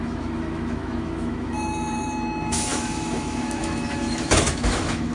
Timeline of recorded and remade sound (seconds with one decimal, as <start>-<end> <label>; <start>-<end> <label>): 0.0-5.1 remade